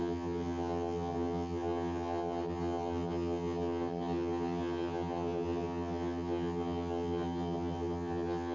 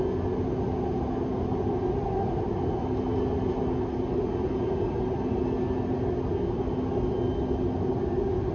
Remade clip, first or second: first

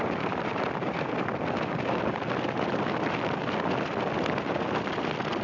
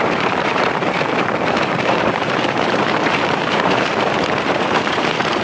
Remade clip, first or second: second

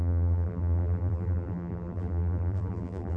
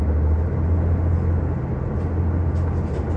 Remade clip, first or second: first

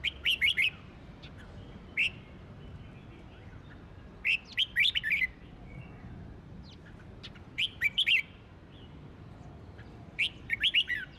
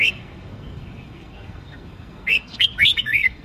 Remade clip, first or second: second